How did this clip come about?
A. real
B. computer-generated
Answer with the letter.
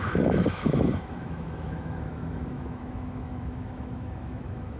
B